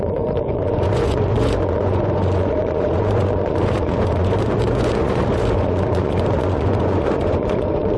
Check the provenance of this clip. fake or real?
fake